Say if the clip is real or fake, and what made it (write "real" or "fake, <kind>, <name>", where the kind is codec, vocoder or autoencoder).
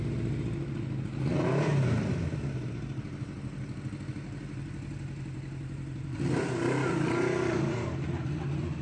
real